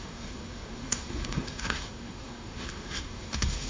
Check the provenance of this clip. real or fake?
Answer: fake